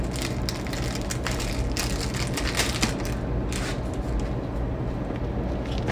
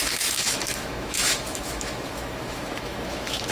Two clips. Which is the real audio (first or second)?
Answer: first